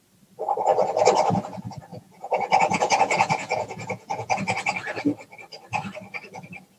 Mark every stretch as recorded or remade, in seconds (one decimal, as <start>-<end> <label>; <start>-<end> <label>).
0.0-1.9 recorded; 1.9-4.4 remade; 4.4-6.8 recorded